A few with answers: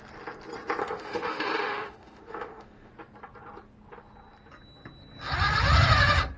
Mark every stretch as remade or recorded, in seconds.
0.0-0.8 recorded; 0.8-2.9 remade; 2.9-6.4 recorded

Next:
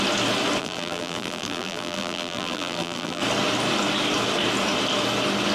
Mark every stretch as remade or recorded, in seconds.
0.0-0.6 recorded; 0.6-3.2 remade; 3.2-5.5 recorded

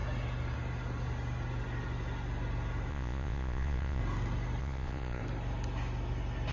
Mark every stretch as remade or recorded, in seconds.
0.0-2.9 recorded; 2.9-4.0 remade; 4.0-4.6 recorded; 4.6-5.2 remade; 5.2-6.5 recorded

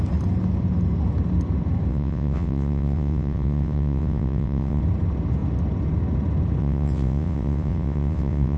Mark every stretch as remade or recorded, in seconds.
0.0-1.9 recorded; 1.9-4.8 remade; 4.8-6.6 recorded; 6.6-8.6 remade

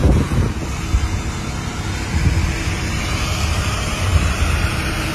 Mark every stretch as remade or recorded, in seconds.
0.0-3.0 recorded; 3.0-5.1 remade

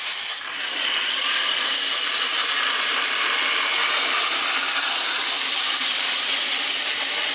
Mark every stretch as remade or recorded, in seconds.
0.0-7.3 recorded

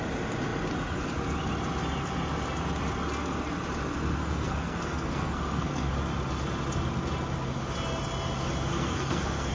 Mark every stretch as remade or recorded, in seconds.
0.0-4.2 recorded; 4.2-5.9 remade; 5.9-8.7 recorded; 8.7-9.5 remade